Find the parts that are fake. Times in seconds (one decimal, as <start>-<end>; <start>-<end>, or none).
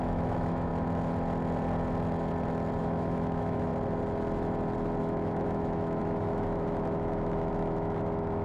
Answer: 0.0-0.7; 2.8-3.7; 5.0-8.4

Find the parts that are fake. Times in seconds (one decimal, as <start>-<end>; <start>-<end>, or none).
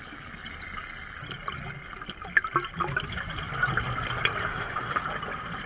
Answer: 4.5-5.0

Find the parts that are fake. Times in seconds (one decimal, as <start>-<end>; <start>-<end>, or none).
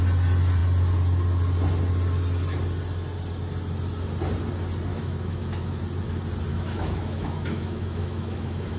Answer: 4.9-5.8; 6.5-8.8